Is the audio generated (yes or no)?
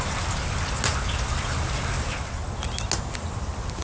no